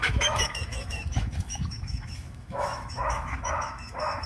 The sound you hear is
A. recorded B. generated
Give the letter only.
B